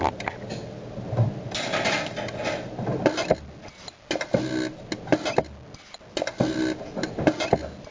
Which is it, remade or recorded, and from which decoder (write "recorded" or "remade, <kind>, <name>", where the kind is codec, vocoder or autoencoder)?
recorded